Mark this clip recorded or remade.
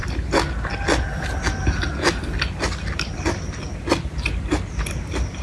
recorded